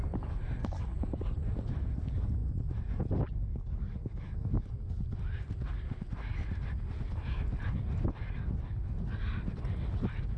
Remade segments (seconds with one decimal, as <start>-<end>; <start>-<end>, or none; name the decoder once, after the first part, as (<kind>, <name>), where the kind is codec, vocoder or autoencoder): 0.6-1.2 (codec, DAC); 3.5-4.7